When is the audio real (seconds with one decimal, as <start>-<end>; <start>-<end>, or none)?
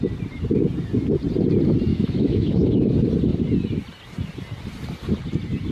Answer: 0.0-1.9; 2.9-5.7